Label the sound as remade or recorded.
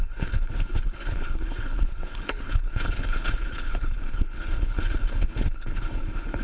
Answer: remade